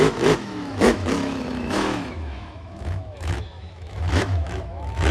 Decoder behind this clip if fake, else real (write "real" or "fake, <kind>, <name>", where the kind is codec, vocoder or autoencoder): fake, autoencoder, DAC-VAE